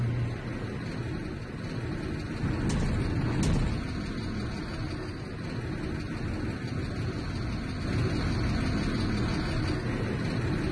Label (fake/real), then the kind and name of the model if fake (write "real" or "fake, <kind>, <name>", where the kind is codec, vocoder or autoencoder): real